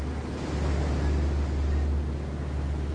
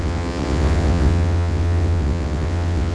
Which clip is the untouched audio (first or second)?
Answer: first